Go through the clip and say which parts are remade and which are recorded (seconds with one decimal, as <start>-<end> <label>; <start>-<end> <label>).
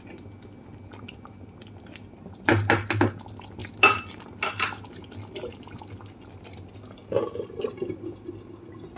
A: 0.0-9.0 recorded